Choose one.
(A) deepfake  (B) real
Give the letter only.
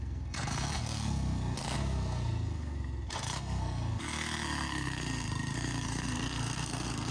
A